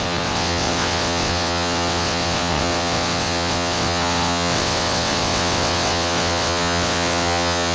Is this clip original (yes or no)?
no